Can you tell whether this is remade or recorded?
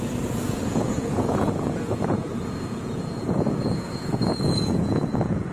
remade